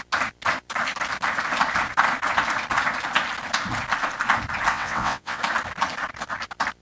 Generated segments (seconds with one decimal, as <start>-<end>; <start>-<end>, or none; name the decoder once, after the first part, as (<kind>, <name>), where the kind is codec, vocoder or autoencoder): 4.7-5.4 (vocoder, WaveNeXt)